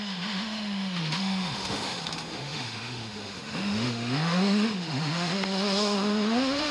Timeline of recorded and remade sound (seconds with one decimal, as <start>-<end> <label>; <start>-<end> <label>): 0.0-6.7 remade